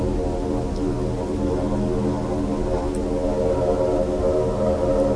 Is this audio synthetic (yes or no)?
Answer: no